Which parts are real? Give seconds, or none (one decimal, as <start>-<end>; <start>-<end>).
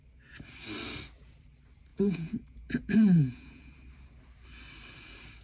0.0-1.9; 3.7-5.4